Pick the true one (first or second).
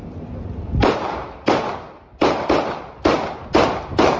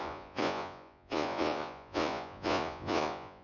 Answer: first